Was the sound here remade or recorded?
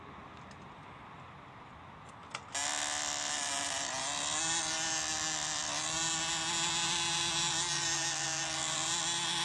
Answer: recorded